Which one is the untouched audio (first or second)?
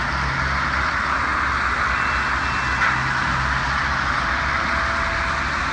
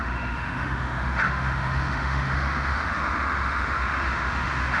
first